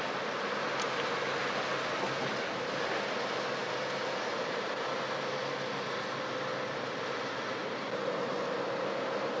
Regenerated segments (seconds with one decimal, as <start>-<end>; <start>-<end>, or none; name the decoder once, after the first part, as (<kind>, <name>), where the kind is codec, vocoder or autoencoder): 7.6-8.3 (vocoder, BigVGAN v2)